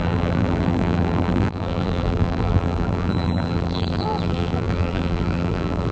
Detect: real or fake fake